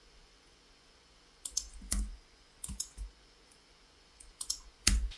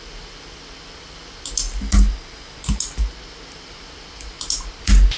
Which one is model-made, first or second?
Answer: first